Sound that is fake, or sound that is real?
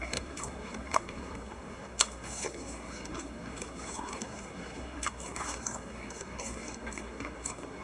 fake